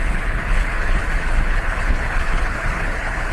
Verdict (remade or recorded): remade